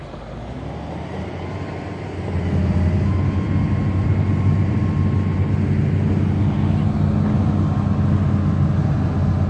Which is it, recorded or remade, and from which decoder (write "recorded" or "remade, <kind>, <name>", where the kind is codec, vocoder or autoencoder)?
recorded